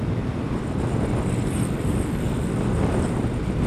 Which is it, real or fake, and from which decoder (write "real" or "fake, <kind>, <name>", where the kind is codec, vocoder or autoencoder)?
real